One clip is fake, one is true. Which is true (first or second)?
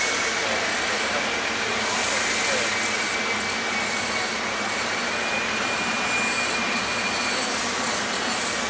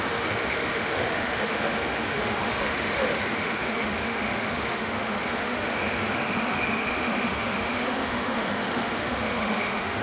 first